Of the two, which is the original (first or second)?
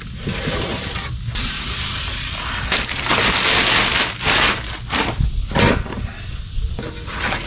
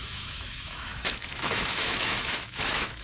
first